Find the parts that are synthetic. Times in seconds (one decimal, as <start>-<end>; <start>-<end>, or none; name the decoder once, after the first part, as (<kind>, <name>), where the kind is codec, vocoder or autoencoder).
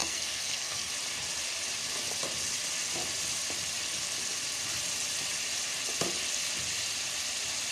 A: 0.0-0.9 (codec, SNAC)